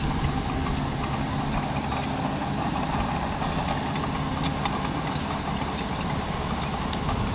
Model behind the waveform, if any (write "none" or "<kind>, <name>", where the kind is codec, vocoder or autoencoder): none